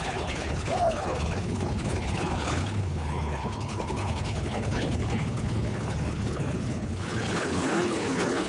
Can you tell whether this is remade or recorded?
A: remade